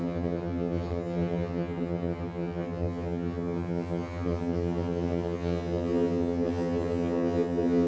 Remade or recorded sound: remade